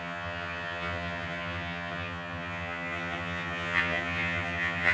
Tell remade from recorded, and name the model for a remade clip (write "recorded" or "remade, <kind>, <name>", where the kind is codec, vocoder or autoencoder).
remade, vocoder, HiFi-GAN